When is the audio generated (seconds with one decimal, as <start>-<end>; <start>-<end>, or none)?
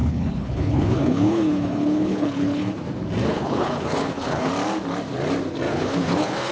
0.0-2.7; 3.3-4.5; 5.7-6.5